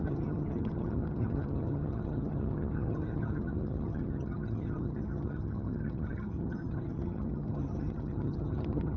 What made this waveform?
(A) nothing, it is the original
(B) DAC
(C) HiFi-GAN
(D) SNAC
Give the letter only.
C